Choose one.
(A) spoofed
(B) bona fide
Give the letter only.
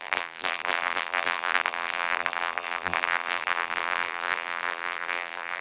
A